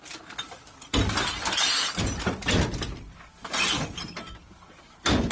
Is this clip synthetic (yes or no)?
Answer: no